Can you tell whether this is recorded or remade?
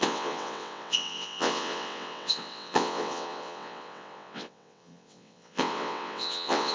remade